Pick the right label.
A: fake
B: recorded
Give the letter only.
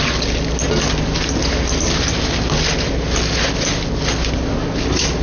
B